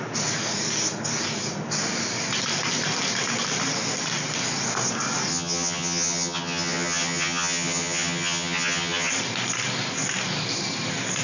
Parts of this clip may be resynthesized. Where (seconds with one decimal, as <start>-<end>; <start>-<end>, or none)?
5.3-9.1